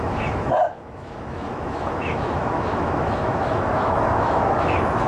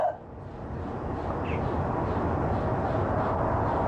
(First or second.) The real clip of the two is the second